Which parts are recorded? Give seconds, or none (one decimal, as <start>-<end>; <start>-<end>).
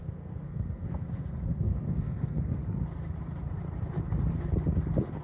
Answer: 2.6-5.2